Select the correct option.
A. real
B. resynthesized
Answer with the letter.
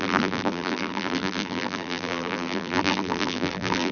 B